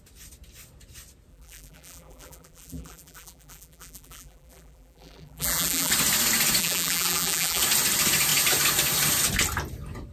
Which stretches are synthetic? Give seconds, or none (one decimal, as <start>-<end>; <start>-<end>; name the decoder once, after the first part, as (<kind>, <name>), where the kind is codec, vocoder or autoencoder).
1.3-5.9 (vocoder, BigVGAN v2); 6.6-7.6